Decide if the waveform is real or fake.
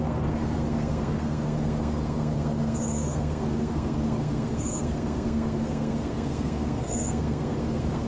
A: fake